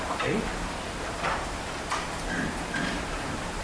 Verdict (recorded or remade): remade